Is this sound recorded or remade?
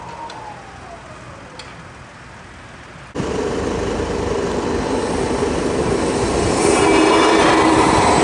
recorded